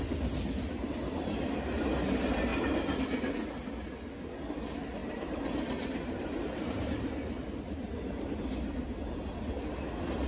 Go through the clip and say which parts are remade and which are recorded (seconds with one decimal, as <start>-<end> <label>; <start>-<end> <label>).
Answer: 0.0-2.5 recorded; 2.5-3.0 remade; 3.0-5.0 recorded; 5.0-8.3 remade; 8.3-10.3 recorded